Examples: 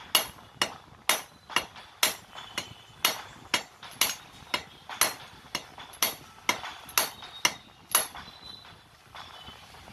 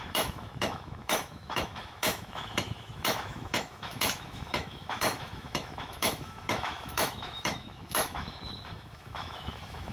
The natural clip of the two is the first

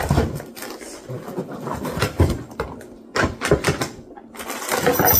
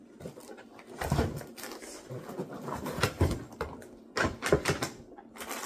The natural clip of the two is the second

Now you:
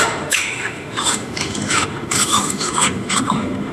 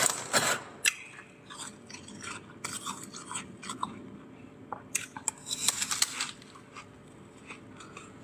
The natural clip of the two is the second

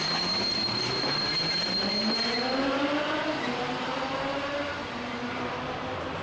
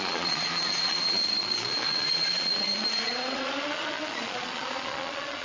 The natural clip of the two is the first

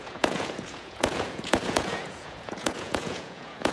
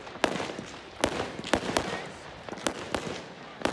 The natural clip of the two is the second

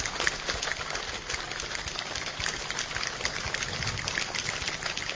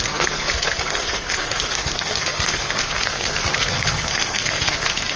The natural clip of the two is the first